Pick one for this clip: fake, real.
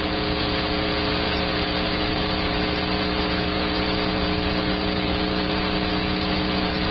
fake